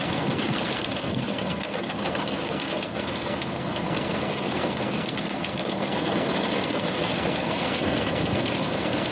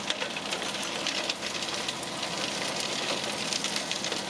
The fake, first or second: first